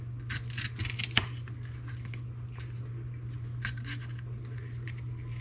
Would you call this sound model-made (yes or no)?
no